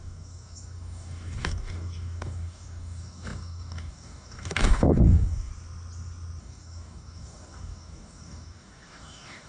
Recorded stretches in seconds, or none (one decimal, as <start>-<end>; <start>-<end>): 5.5-6.4